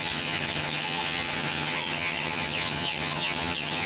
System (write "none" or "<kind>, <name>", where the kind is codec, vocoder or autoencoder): vocoder, HiFi-GAN